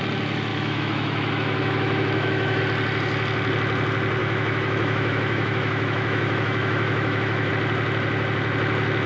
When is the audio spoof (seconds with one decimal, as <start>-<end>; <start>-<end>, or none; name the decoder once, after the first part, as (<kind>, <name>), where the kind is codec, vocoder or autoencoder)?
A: 0.5-2.6 (autoencoder, DAC-VAE); 4.2-7.5